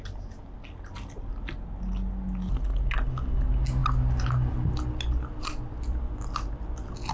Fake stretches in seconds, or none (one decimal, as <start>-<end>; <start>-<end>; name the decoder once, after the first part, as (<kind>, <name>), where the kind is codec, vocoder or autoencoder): none